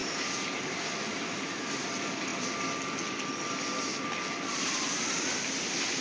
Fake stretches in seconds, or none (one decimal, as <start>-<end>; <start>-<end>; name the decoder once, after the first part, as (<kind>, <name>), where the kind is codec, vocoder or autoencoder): 0.0-1.9 (vocoder, BigVGAN v2)